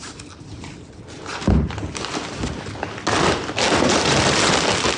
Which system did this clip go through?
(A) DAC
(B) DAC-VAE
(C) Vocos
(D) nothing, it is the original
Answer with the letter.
D